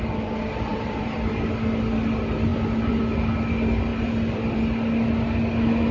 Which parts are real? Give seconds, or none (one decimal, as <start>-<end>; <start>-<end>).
0.0-0.7; 1.3-2.5; 3.5-3.9; 4.7-5.9